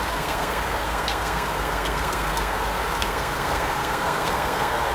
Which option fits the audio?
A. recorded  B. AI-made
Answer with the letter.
B